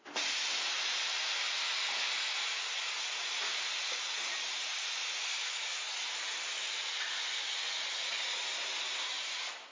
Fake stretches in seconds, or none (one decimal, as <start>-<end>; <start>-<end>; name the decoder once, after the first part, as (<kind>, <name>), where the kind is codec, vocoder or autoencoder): 6.6-7.4 (vocoder, BigVGAN v2)